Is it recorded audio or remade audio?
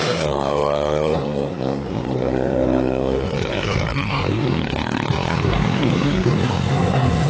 remade